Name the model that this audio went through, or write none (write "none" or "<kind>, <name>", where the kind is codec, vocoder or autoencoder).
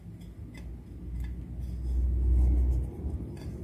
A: none